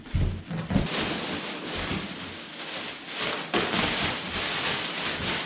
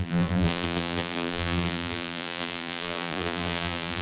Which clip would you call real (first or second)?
first